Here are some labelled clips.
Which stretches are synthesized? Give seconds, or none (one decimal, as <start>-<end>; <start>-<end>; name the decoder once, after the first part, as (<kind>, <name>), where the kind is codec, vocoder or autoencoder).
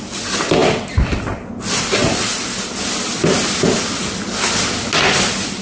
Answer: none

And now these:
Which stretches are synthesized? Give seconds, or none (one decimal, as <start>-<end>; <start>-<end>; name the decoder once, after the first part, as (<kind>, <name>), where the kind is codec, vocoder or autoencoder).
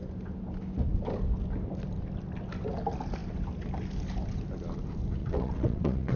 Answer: 5.2-6.2 (vocoder, WaveNeXt)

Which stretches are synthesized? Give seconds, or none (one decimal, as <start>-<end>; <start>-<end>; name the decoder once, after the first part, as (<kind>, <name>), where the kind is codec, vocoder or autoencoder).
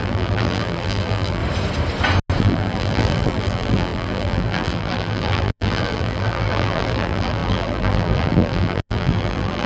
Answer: 0.0-1.4 (vocoder, BigVGAN v2); 2.4-9.7